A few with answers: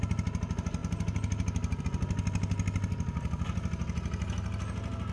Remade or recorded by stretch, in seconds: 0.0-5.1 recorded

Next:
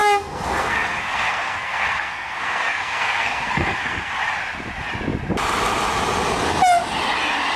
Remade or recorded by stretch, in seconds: 0.0-4.1 remade; 4.1-7.6 recorded

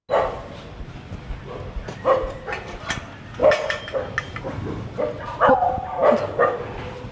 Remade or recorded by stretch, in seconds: 0.0-7.1 recorded

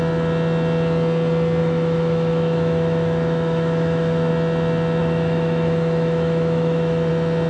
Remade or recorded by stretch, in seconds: 0.0-1.6 recorded; 1.6-4.3 remade; 4.3-5.0 recorded; 5.0-7.1 remade; 7.1-7.5 recorded

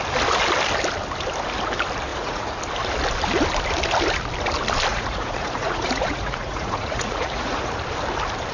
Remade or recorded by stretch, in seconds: 0.0-2.1 recorded; 2.1-2.6 remade; 2.6-4.9 recorded; 4.9-7.8 remade; 7.8-8.5 recorded